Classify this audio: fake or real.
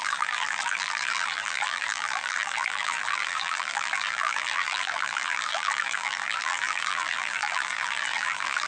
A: fake